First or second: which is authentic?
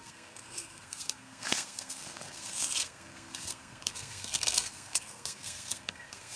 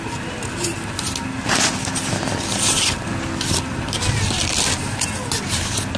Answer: second